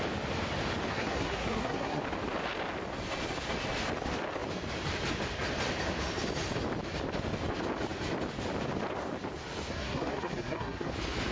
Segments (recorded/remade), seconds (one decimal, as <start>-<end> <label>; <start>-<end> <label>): 0.0-0.9 recorded; 0.9-2.0 remade; 2.0-9.7 recorded; 9.7-10.9 remade; 10.9-11.3 recorded